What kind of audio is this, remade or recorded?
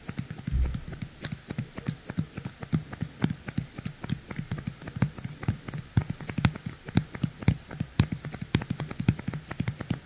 recorded